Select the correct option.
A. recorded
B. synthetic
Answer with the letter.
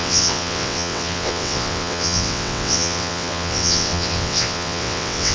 B